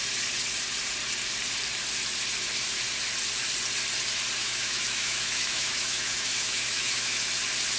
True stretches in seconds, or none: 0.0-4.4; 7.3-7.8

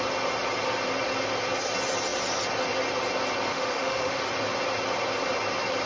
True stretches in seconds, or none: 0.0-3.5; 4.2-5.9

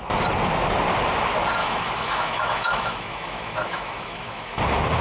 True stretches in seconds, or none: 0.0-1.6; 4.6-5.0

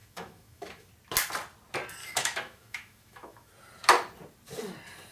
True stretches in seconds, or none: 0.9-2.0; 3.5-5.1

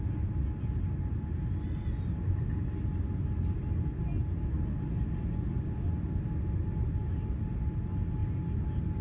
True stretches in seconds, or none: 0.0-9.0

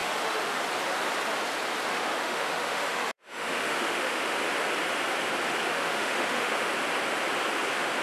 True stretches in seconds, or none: 0.6-1.9; 4.4-5.7; 6.7-8.0